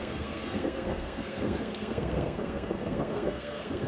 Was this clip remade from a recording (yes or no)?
yes